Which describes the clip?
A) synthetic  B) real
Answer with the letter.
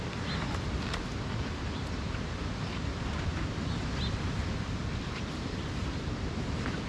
B